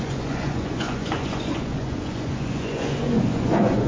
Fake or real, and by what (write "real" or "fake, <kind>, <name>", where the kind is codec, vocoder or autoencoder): fake, vocoder, Vocos